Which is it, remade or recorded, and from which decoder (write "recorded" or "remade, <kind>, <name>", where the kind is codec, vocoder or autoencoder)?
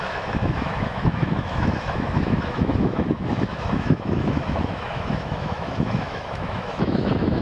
remade, autoencoder, DAC-VAE